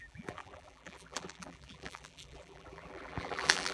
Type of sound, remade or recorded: remade